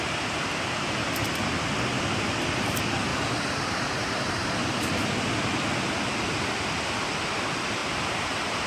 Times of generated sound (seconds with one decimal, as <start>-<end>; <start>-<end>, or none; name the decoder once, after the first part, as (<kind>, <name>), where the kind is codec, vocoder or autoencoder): 3.1-4.8 (vocoder, BigVGAN v2); 7.8-8.7